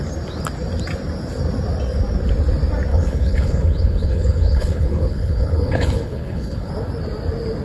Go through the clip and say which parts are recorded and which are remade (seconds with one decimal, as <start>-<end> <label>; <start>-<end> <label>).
0.0-2.9 recorded; 2.9-6.7 remade; 6.7-7.6 recorded